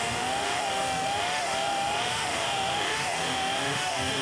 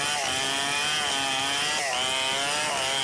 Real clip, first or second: second